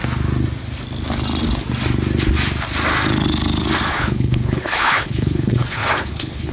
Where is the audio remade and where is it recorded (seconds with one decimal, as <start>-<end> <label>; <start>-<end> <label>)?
0.0-3.9 recorded; 3.9-6.5 remade